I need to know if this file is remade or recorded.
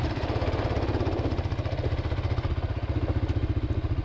recorded